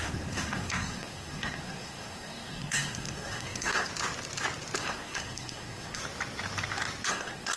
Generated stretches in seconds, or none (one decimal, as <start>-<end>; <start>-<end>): 0.0-3.9; 4.8-6.0; 7.1-7.6